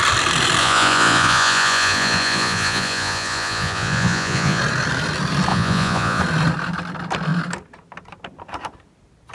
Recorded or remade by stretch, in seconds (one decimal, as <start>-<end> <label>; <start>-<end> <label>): 0.0-0.6 recorded; 0.6-4.6 remade; 4.6-5.5 recorded; 5.5-6.2 remade; 6.2-9.3 recorded